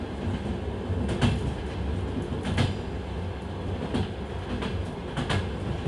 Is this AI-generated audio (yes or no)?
no